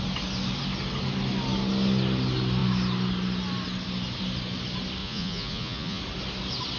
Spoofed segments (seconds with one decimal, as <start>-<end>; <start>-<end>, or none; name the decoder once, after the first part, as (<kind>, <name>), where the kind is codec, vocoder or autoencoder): 5.0-6.0 (vocoder, Vocos)